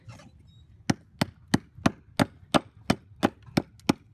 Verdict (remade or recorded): recorded